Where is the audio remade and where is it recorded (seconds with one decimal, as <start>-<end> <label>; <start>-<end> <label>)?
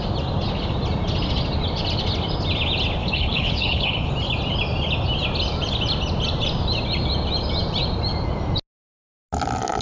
0.0-3.0 recorded; 3.0-4.1 remade; 4.1-9.8 recorded